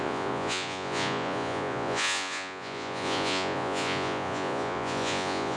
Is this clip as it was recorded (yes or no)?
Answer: no